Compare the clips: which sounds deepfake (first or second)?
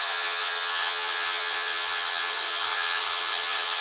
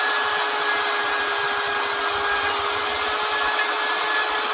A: first